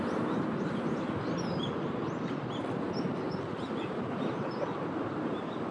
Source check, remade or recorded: recorded